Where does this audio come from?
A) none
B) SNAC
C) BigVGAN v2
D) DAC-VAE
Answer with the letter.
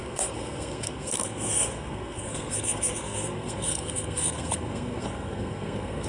B